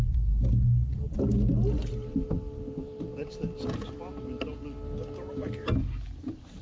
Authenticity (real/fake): real